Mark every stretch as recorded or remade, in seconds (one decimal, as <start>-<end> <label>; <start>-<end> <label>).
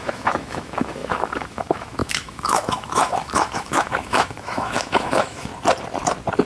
0.0-5.5 remade; 5.5-6.5 recorded